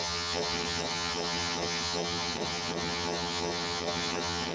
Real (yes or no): no